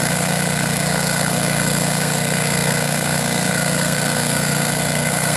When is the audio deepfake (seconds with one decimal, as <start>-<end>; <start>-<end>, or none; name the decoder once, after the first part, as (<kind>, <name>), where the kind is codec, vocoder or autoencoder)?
0.0-5.4 (codec, SNAC)